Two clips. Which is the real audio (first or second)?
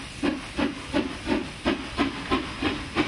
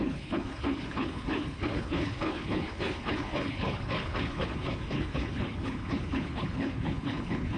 first